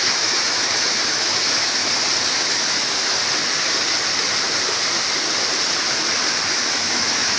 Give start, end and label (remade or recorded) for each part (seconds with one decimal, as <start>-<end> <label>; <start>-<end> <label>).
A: 0.0-1.8 remade; 1.8-2.3 recorded; 2.3-3.2 remade; 3.2-6.5 recorded; 6.5-7.4 remade